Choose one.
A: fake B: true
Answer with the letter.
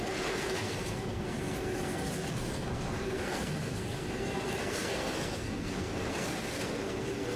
A